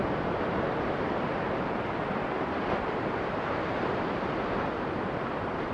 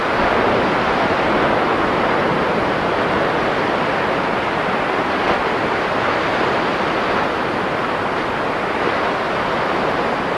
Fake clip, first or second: first